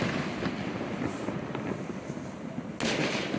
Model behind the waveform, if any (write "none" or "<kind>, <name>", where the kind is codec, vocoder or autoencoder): none